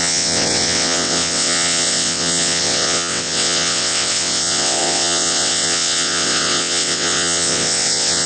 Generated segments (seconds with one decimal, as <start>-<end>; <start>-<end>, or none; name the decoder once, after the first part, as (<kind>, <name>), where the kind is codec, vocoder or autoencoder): 0.0-8.3 (vocoder, WaveNeXt)